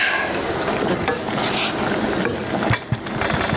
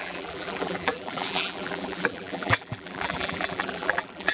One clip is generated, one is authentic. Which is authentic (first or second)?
first